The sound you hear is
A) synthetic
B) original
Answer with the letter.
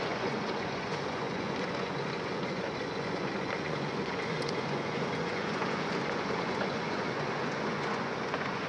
A